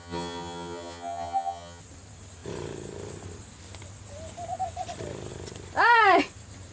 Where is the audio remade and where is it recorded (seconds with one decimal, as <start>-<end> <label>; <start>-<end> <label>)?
0.0-1.8 remade; 1.8-6.7 recorded